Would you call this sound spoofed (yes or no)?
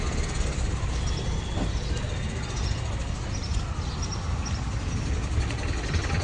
no